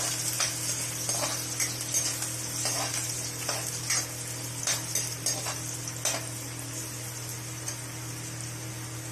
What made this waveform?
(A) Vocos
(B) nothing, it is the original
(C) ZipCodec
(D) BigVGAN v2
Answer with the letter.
B